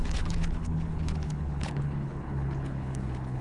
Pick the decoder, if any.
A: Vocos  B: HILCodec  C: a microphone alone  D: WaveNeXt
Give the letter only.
B